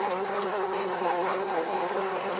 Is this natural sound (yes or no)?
no